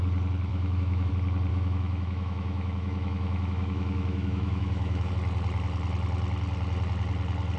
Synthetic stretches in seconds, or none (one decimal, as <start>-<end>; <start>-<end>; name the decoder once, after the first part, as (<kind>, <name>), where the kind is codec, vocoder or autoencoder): 0.5-1.1 (autoencoder, DAC-VAE); 1.5-5.1